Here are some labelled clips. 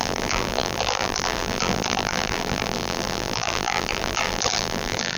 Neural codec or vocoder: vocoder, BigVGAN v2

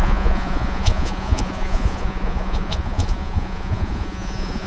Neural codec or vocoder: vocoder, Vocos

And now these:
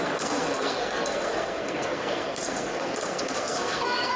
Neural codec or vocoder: codec, SNAC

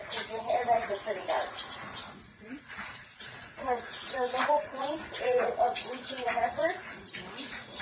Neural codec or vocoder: vocoder, Vocos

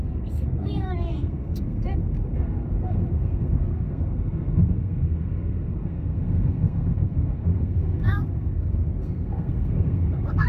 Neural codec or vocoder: codec, SNAC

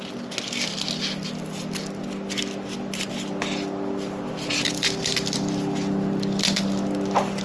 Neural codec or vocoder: none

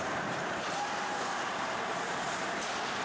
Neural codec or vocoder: vocoder, BigVGAN v2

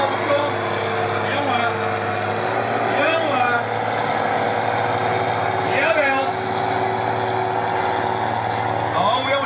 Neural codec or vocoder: none